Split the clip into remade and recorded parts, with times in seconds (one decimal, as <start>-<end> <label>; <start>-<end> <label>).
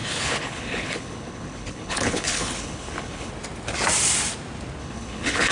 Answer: 0.0-3.3 remade; 3.3-4.8 recorded; 4.8-5.5 remade